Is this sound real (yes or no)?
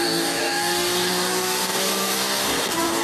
no